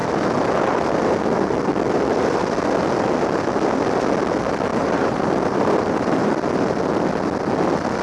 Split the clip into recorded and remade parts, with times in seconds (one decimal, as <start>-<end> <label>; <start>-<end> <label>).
0.0-4.7 recorded; 4.7-6.3 remade; 6.3-8.0 recorded